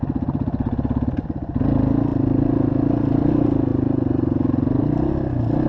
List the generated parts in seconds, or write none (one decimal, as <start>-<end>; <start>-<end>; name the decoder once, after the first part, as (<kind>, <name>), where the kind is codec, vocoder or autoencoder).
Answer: none

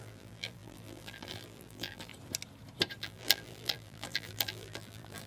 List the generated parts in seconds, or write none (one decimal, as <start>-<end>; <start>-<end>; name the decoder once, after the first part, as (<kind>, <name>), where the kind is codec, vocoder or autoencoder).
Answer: 0.0-2.1 (vocoder, BigVGAN v2); 3.0-5.3